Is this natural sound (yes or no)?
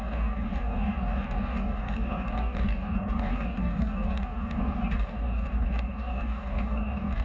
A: no